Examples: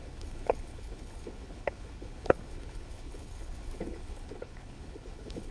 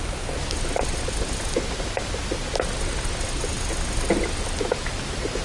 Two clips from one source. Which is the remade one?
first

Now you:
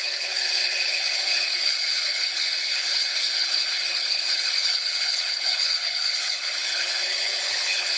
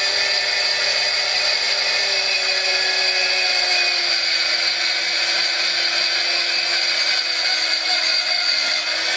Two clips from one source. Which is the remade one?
first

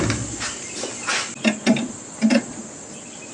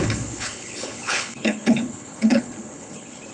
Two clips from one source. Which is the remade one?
second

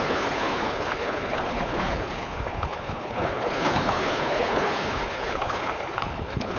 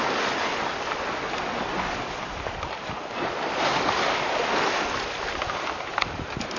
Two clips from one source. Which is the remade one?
first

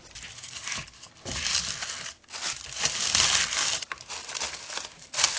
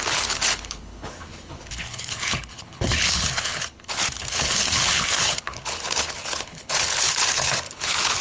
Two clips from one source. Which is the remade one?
second